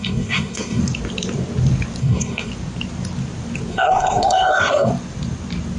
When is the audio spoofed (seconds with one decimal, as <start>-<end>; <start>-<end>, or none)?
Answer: 0.0-0.8; 2.0-2.5; 3.7-4.9